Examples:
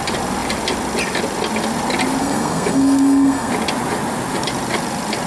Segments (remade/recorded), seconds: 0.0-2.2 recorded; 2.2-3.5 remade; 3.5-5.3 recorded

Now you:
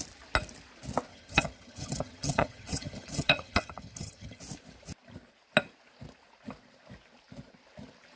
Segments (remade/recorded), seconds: 0.0-1.1 recorded; 1.1-4.4 remade; 4.4-8.2 recorded

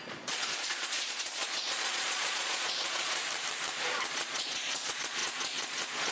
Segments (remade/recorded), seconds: 0.0-3.2 remade; 3.2-4.1 recorded; 4.1-6.1 remade

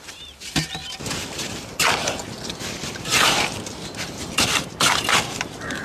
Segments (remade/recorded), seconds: 0.0-0.8 remade; 0.8-1.3 recorded; 1.3-2.2 remade; 2.2-2.8 recorded; 2.8-5.8 remade